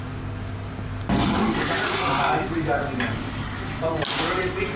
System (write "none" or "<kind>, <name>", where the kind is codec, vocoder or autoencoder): none